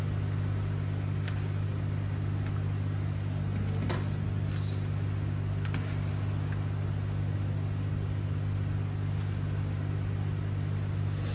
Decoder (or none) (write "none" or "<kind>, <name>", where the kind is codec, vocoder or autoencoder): none